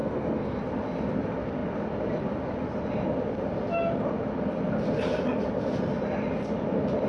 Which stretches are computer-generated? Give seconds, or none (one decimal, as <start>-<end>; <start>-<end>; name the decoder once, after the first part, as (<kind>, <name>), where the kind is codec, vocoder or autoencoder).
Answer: 0.0-0.6 (codec, SNAC)